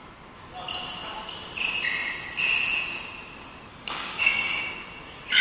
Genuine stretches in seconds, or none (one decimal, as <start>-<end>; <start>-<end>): 0.0-3.7; 4.6-5.4